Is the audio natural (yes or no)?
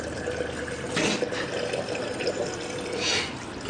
yes